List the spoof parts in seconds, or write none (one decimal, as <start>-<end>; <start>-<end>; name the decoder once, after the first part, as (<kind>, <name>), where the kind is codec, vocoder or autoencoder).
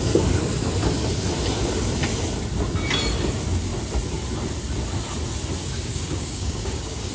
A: 5.6-7.1 (codec, DAC)